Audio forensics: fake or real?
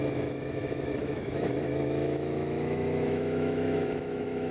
fake